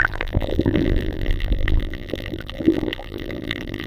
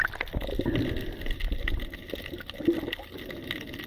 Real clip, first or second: second